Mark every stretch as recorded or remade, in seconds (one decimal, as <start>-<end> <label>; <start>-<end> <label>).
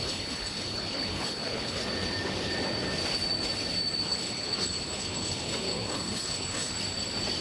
0.0-1.8 remade; 1.8-4.0 recorded; 4.0-6.7 remade; 6.7-7.4 recorded